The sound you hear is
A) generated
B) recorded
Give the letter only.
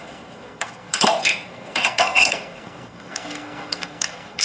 A